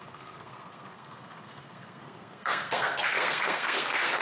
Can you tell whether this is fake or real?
fake